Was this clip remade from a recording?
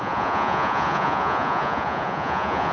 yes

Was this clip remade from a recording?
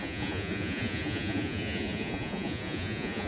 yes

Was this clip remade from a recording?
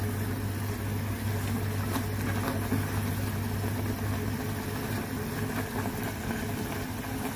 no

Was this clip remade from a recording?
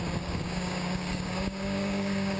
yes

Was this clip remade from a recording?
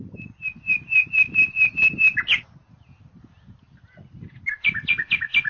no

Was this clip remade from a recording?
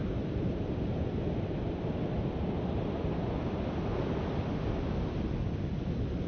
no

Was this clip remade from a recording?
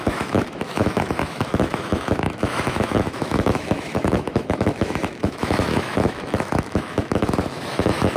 yes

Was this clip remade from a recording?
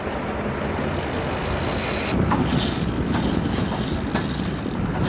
no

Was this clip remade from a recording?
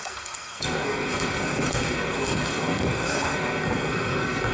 yes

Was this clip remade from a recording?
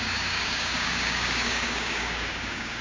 yes